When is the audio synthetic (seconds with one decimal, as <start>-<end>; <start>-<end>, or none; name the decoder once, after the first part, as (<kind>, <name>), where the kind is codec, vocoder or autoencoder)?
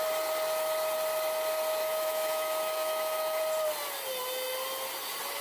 1.8-3.4 (autoencoder, DAC-VAE)